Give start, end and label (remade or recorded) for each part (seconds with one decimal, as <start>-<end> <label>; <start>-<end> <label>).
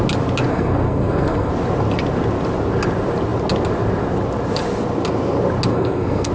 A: 0.0-0.5 recorded; 0.5-1.5 remade; 1.5-5.7 recorded; 5.7-6.3 remade